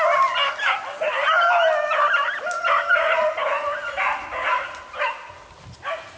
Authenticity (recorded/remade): recorded